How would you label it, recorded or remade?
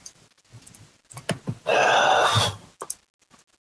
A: recorded